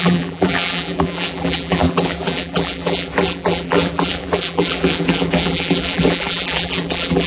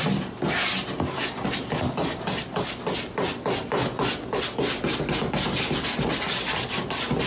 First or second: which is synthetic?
first